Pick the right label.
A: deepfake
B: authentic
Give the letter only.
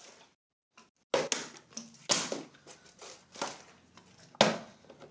B